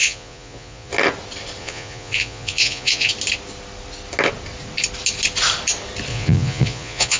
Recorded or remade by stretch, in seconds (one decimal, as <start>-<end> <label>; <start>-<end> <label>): 0.0-0.9 remade; 0.9-1.6 recorded; 1.6-3.1 remade; 3.1-6.1 recorded; 6.1-7.2 remade